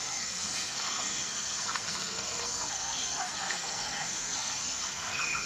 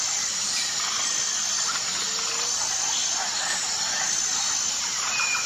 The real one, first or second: second